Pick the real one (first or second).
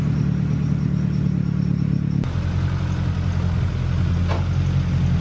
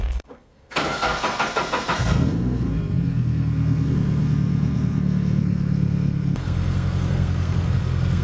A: first